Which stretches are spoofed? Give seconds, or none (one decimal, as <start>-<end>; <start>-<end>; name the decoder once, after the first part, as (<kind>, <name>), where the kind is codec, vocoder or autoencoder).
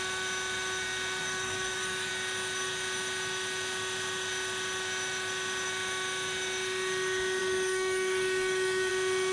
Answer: 1.2-2.1 (codec, DAC); 7.4-8.9